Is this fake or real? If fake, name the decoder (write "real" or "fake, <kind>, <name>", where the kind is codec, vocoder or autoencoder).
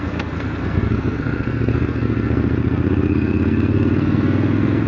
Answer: fake, codec, SNAC